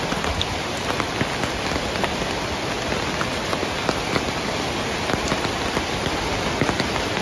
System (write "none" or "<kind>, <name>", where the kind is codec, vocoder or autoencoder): none